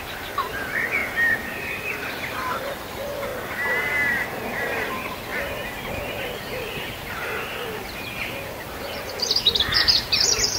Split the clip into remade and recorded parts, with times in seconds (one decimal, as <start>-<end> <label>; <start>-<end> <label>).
0.0-3.3 remade; 3.3-4.3 recorded; 4.3-5.3 remade; 5.3-7.2 recorded; 7.2-10.6 remade